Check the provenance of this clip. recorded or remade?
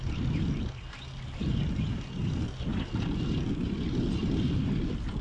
recorded